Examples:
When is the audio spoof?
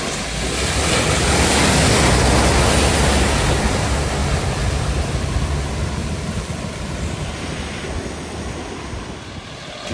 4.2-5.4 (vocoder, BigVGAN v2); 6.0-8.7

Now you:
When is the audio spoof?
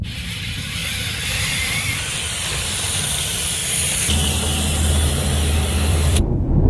0.0-0.8 (vocoder, BigVGAN v2); 1.4-3.6; 5.9-6.7